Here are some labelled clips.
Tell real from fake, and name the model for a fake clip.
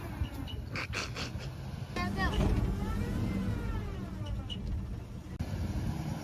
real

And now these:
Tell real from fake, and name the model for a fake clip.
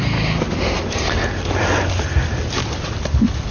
real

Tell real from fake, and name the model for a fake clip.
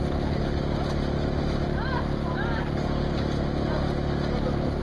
real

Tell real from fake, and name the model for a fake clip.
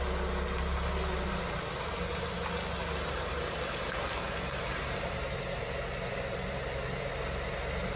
real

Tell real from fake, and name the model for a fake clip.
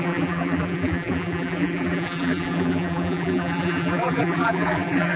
fake, vocoder, BigVGAN v2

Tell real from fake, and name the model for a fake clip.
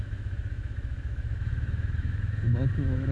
fake, autoencoder, DAC-VAE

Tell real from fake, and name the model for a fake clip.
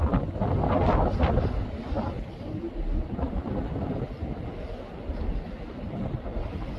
real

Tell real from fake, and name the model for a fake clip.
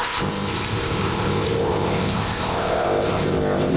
fake, codec, ZipCodec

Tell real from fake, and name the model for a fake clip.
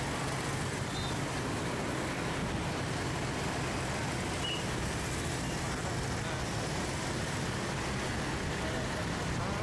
real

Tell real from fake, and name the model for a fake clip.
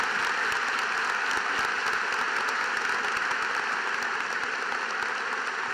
real